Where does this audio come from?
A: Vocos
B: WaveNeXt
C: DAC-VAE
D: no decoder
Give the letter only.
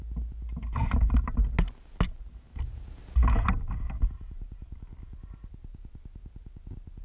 D